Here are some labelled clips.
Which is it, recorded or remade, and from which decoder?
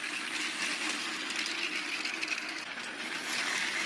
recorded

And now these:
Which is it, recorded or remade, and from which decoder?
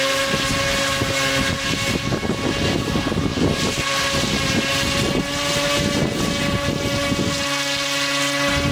recorded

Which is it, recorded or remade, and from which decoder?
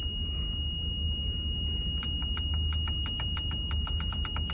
recorded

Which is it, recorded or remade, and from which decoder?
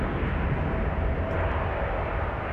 recorded